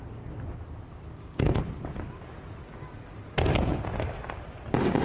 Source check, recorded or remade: recorded